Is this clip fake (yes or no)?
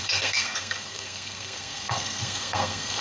yes